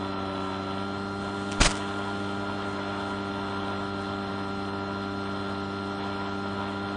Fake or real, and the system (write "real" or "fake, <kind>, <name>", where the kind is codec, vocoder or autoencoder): real